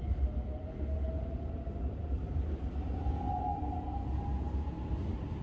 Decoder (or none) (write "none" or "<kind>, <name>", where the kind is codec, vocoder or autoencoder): none